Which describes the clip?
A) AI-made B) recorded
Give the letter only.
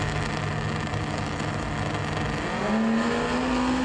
B